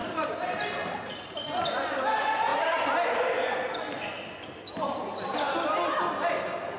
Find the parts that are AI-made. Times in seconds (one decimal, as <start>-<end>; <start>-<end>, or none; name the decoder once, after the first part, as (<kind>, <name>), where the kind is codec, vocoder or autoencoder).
none